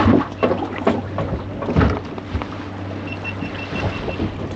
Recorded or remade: recorded